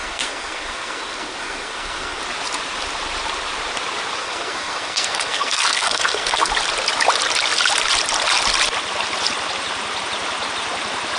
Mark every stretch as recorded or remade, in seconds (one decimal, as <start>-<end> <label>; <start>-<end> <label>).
0.0-2.2 remade; 2.2-4.2 recorded; 4.2-6.5 remade; 6.5-11.2 recorded